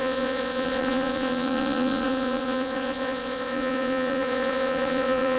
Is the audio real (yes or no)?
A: no